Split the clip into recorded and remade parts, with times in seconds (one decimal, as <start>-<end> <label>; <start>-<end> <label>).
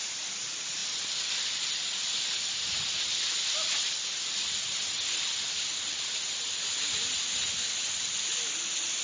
0.0-9.0 recorded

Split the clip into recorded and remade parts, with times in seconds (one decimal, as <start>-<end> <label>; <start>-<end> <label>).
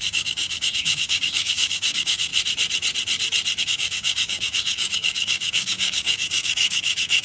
0.0-2.3 remade; 2.3-3.6 recorded; 3.6-7.2 remade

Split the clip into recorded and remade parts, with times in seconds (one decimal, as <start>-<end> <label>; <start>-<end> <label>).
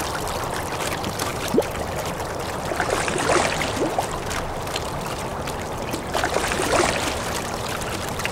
0.0-8.3 recorded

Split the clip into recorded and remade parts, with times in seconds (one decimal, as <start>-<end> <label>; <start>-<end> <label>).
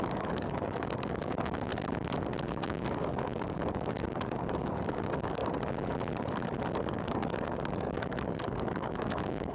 0.0-1.7 remade; 1.7-2.5 recorded; 2.5-5.4 remade; 5.4-6.7 recorded; 6.7-9.5 remade